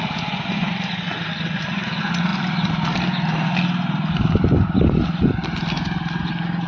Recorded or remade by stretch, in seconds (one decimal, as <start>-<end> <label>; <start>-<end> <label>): 0.0-6.7 recorded